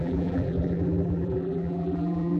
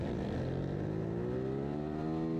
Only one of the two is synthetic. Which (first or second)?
first